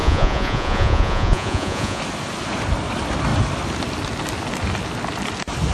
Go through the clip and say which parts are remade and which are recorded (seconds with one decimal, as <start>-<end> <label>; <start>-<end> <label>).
0.0-2.0 remade; 2.0-5.7 recorded